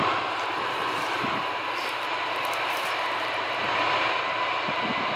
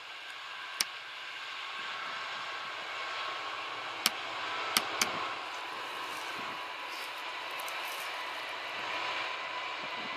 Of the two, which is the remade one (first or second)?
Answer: first